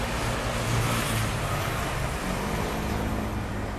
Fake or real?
real